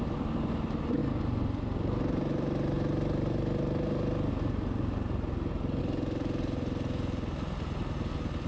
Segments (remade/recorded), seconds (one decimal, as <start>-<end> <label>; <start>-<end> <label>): 0.0-8.5 recorded